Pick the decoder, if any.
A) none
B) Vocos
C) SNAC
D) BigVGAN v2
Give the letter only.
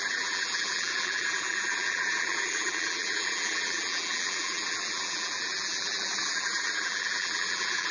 D